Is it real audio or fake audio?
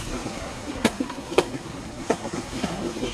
fake